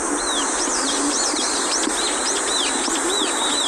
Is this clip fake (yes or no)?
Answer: no